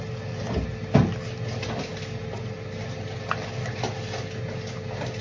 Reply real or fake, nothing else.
real